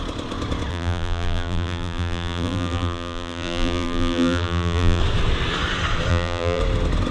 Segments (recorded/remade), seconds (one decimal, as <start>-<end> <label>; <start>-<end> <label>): 0.0-0.7 recorded; 0.7-5.0 remade; 5.0-6.1 recorded; 6.1-6.6 remade; 6.6-7.1 recorded